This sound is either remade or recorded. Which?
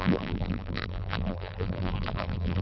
remade